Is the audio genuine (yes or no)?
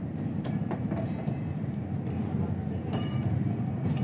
no